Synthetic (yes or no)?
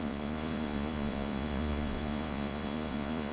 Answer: yes